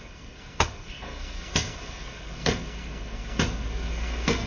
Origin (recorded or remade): remade